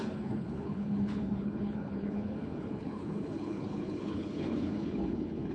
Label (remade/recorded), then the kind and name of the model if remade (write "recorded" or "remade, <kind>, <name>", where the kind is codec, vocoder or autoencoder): remade, codec, HILCodec